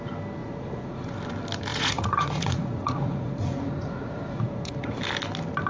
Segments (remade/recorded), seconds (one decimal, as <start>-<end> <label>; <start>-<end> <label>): 0.0-0.4 recorded; 0.4-1.2 remade; 1.2-1.7 recorded; 1.7-5.0 remade; 5.0-5.7 recorded